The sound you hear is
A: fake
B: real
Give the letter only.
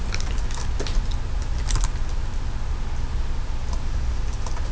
B